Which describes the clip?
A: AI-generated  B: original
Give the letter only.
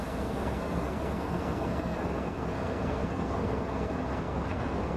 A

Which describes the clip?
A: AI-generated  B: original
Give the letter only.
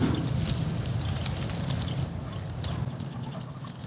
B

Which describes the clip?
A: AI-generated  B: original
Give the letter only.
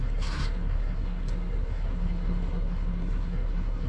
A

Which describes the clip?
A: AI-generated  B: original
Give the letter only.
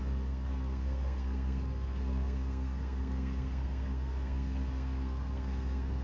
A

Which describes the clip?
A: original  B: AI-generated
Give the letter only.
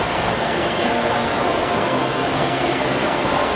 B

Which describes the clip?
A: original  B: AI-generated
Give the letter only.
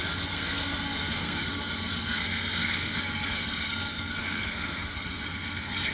B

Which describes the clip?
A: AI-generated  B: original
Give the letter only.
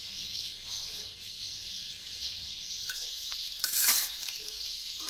A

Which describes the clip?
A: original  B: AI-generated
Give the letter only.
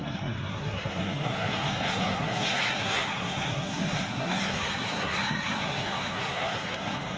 B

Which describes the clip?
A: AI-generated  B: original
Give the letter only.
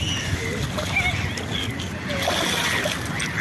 B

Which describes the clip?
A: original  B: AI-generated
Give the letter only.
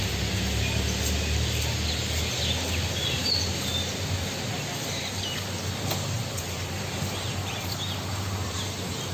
A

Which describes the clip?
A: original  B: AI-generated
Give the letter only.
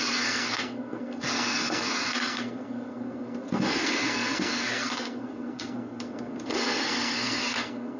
B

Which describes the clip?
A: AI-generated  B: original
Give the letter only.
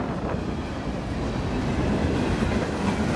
B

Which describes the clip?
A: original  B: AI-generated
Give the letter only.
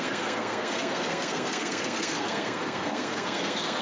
B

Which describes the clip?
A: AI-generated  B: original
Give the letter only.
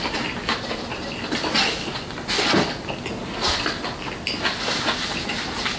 B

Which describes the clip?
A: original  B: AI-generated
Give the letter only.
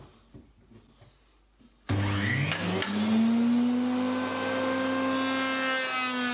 A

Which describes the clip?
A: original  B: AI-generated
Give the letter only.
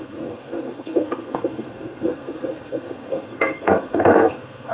B